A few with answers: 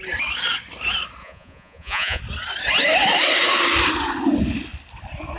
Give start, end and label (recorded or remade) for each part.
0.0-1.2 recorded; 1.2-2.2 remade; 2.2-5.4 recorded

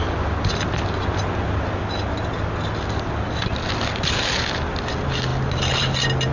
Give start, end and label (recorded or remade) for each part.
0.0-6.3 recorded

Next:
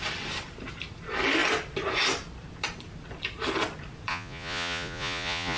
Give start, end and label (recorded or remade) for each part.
0.0-4.1 recorded; 4.1-5.6 remade

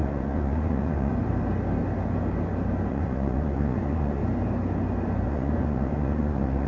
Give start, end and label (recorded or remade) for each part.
0.0-1.1 remade; 1.1-2.9 recorded; 2.9-4.2 remade; 4.2-5.3 recorded; 5.3-6.7 remade